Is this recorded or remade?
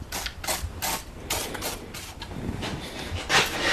recorded